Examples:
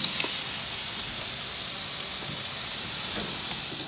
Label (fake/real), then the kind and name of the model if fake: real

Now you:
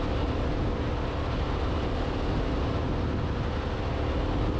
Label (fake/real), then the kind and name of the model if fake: real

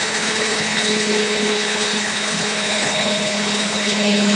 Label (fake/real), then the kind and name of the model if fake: fake, codec, HILCodec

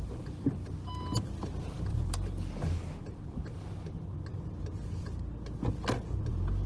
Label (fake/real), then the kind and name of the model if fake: real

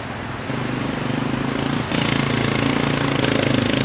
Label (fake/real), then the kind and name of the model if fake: real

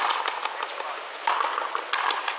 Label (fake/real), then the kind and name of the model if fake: real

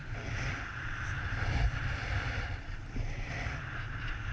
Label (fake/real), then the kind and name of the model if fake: fake, vocoder, BigVGAN v2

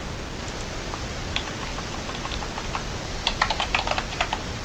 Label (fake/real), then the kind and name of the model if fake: real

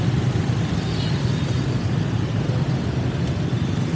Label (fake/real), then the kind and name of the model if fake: real